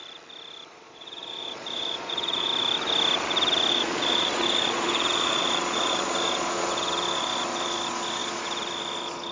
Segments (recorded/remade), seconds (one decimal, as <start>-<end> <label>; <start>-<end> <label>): 0.0-0.7 recorded; 0.7-2.5 remade; 2.5-3.7 recorded; 3.7-9.3 remade